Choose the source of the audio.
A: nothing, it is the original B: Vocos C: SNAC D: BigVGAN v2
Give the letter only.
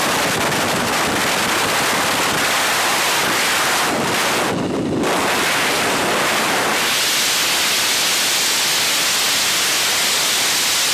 A